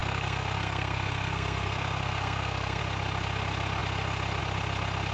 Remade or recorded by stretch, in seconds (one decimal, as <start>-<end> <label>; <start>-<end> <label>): 0.0-2.8 remade; 2.8-5.1 recorded